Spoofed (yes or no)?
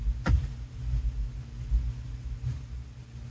no